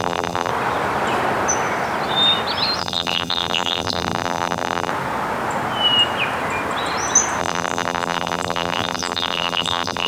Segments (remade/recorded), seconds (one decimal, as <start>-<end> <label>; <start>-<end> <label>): 0.0-0.5 remade; 0.5-2.8 recorded; 2.8-4.9 remade; 4.9-7.4 recorded; 7.4-10.1 remade

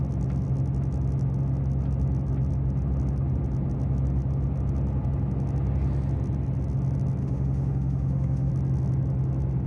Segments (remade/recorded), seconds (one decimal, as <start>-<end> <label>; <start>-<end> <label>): 0.0-7.2 recorded; 7.2-8.5 remade; 8.5-9.7 recorded

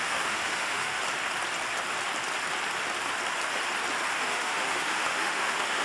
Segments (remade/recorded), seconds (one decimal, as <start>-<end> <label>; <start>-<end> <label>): 0.0-1.0 remade; 1.0-4.1 recorded; 4.1-5.8 remade

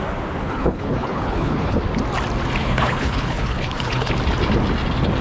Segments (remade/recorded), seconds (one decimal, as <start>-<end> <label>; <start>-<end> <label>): 0.0-0.4 recorded; 0.4-1.8 remade; 1.8-2.6 recorded; 2.6-4.1 remade; 4.1-5.2 recorded

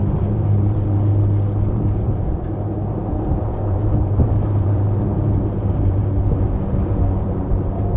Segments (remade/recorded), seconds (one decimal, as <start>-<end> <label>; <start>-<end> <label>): 0.0-1.1 remade; 1.1-1.7 recorded; 1.7-6.0 remade; 6.0-7.2 recorded; 7.2-8.0 remade

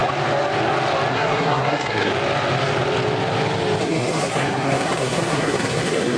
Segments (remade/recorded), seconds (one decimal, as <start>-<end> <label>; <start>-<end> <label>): 0.0-1.1 recorded; 1.1-2.1 remade; 2.1-3.8 recorded; 3.8-6.2 remade

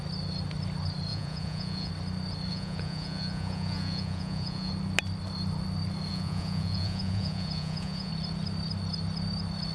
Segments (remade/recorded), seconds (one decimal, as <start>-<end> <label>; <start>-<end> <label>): 0.0-1.1 recorded; 1.1-1.9 remade; 1.9-2.5 recorded; 2.5-4.7 remade; 4.7-6.1 recorded; 6.1-8.1 remade; 8.1-9.7 recorded

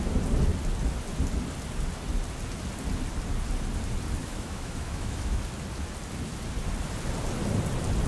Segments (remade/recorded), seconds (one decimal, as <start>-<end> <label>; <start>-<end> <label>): 0.0-4.2 recorded; 4.2-5.4 remade; 5.4-8.1 recorded